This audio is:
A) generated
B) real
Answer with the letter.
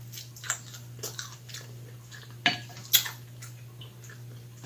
B